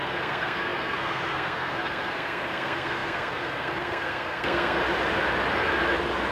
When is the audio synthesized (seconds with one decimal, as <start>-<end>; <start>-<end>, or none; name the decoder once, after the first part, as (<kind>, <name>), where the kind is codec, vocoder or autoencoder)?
0.0-4.8 (codec, SNAC)